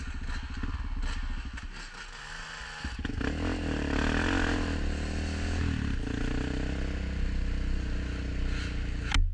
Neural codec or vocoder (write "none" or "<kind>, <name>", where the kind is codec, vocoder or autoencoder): none